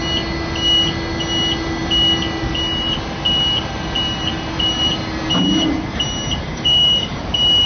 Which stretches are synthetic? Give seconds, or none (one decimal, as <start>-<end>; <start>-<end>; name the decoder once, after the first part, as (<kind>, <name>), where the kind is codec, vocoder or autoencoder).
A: 6.4-7.2 (codec, DAC)